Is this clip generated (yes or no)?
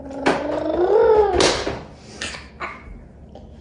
no